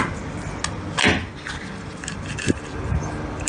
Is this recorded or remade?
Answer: recorded